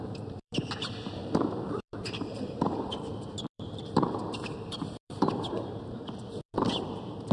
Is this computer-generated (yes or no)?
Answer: yes